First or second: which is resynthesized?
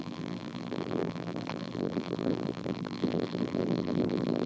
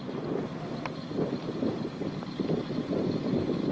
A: first